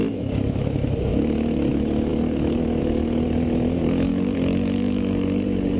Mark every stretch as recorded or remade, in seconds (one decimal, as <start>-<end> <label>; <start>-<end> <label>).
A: 0.0-1.1 remade; 1.1-1.7 recorded; 1.7-4.1 remade; 4.1-5.8 recorded